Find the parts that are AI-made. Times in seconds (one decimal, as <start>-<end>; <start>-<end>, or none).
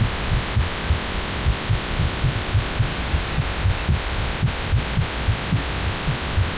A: 2.9-3.4